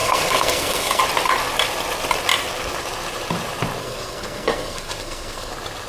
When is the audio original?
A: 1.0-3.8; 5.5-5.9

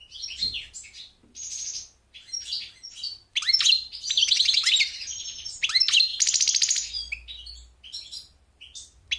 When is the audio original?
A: 0.0-9.2

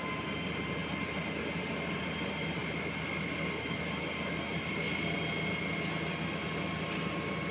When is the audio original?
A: 0.0-7.5

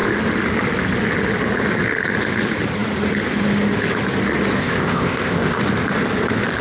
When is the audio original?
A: 0.0-4.6; 5.6-6.6

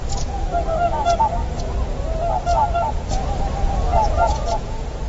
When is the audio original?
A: 0.0-3.9

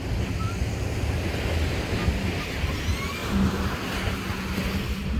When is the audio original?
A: 0.0-3.2; 4.0-5.2

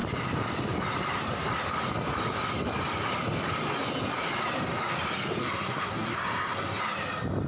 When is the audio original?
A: 0.0-5.4; 6.8-7.5

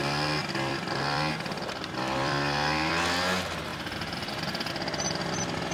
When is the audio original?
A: 0.0-0.4; 2.9-3.7; 4.7-5.7